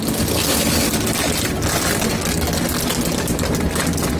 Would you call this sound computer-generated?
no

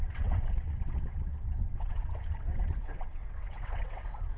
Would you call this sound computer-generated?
yes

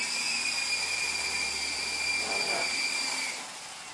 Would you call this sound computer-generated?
yes